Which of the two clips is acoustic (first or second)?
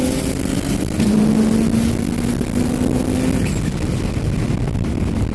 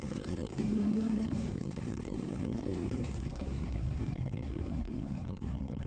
first